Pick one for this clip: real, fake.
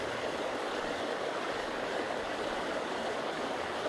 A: fake